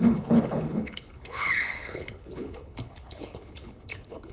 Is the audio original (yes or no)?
no